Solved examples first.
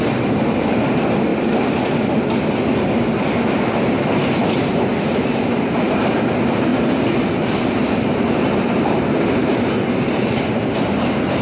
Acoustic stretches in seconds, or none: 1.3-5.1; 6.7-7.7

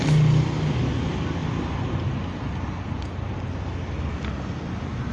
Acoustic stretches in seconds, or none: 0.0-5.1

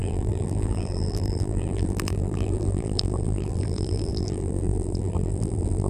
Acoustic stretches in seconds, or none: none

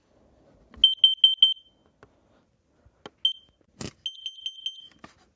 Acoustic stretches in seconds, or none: 0.0-5.4

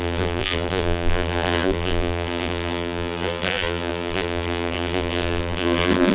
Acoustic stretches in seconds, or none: none

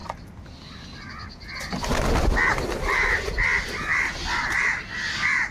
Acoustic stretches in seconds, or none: 0.0-5.5

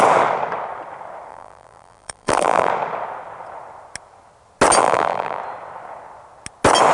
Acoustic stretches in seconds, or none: 0.0-1.3; 2.7-4.8; 5.4-6.9

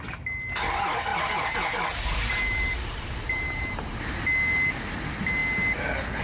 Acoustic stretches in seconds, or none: 0.0-1.1; 4.0-6.2